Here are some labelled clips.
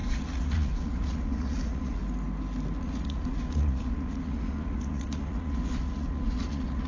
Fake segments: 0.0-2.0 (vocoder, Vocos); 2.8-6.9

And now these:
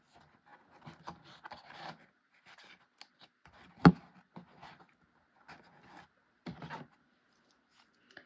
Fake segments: none

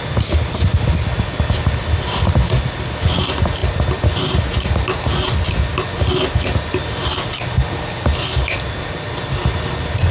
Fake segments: none

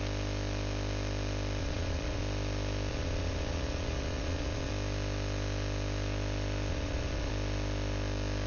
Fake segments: 1.6-2.2 (vocoder, Vocos); 2.9-4.7; 6.7-7.3

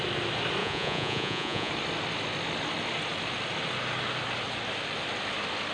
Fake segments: 0.6-1.7 (vocoder, Vocos)

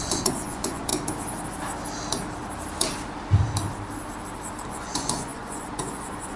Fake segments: 0.0-0.9 (vocoder, Vocos); 4.7-6.4